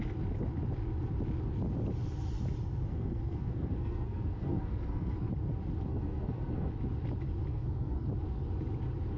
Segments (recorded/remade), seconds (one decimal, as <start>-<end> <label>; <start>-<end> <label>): 0.0-2.9 recorded; 2.9-5.3 remade; 5.3-5.9 recorded; 5.9-6.7 remade; 6.7-7.5 recorded; 7.5-8.1 remade; 8.1-9.2 recorded

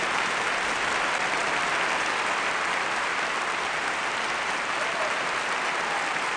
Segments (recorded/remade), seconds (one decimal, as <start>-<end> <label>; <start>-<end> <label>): 0.0-1.4 recorded; 1.4-5.2 remade; 5.2-6.4 recorded

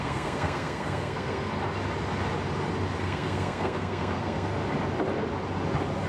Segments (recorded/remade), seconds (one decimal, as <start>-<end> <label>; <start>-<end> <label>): 0.0-1.5 remade; 1.5-3.0 recorded; 3.0-4.5 remade; 4.5-6.1 recorded

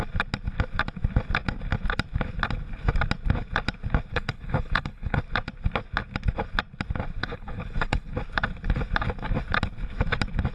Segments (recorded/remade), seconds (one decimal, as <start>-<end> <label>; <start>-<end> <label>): 0.0-4.1 recorded; 4.1-5.2 remade; 5.2-7.2 recorded; 7.2-8.1 remade; 8.1-10.5 recorded

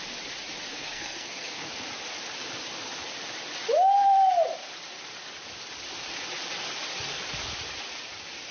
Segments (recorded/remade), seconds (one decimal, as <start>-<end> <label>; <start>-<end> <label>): 0.0-0.7 recorded; 0.7-1.7 remade; 1.7-8.5 recorded